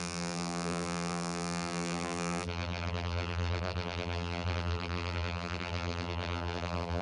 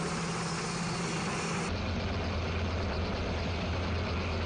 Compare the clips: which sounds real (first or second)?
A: second